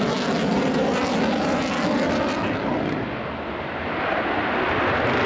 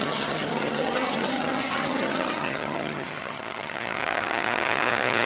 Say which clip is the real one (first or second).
first